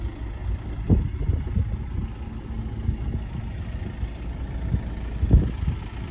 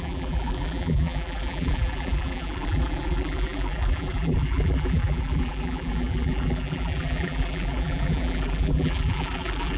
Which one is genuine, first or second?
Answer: first